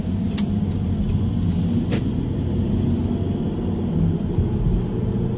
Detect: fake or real real